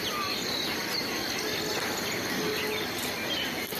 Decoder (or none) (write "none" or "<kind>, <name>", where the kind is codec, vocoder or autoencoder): none